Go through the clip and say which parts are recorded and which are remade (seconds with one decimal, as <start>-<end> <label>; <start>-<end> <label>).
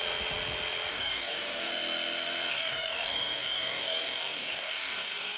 0.0-0.9 recorded; 0.9-1.7 remade; 1.7-2.5 recorded; 2.5-5.4 remade